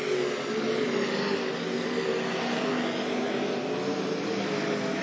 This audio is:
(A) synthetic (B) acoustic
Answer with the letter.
B